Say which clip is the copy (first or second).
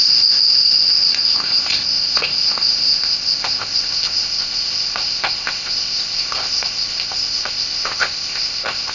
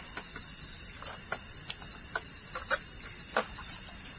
first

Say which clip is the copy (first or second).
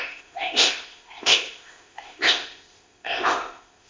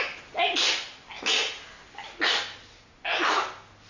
first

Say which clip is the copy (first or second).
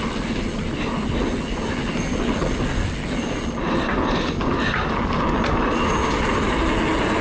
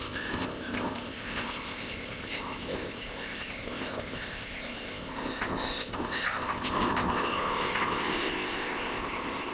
second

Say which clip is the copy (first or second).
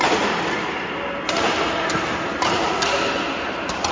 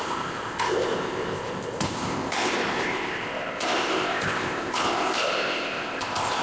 second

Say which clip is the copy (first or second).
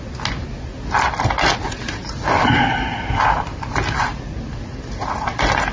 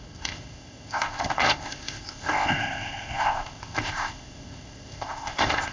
second